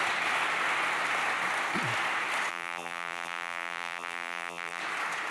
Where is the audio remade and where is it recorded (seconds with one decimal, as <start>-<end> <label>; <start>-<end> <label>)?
0.0-2.5 recorded; 2.5-4.8 remade; 4.8-5.3 recorded